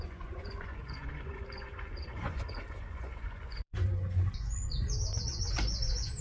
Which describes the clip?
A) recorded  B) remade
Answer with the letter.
B